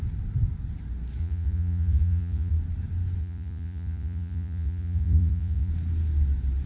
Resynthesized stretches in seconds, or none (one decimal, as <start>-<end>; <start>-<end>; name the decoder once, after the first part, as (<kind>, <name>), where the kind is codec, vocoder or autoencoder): 1.2-2.5 (vocoder, Vocos); 3.2-5.7